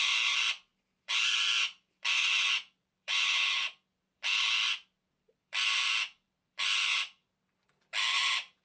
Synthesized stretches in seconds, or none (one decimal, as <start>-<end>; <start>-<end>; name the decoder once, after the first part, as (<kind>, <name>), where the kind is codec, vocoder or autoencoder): 0.0-7.2 (vocoder, BigVGAN v2); 8.0-8.6